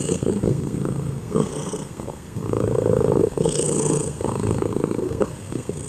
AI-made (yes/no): yes